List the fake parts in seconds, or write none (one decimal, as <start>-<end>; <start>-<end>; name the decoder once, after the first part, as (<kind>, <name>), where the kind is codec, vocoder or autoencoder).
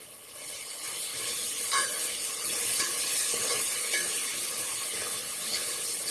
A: 0.0-6.1 (codec, HILCodec)